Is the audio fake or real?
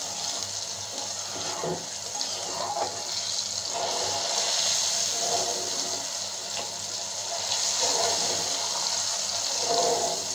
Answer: real